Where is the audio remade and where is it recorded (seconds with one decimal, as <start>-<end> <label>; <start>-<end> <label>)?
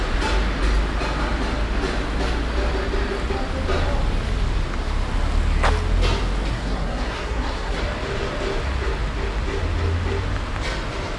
0.0-6.5 recorded; 6.5-7.8 remade; 7.8-11.2 recorded